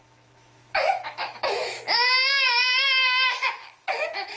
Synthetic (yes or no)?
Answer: yes